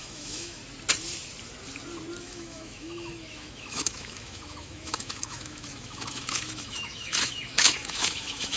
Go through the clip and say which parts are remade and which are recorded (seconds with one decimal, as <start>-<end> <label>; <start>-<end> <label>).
0.0-0.6 remade; 0.6-2.2 recorded; 2.2-8.6 remade